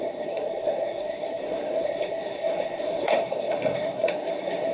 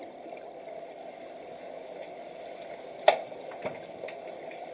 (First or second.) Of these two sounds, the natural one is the second